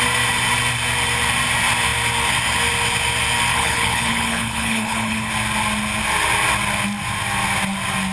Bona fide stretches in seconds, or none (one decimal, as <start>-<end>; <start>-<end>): 0.0-3.5; 5.3-8.1